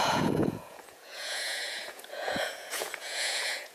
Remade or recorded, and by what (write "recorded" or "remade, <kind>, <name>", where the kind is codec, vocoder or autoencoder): remade, vocoder, Vocos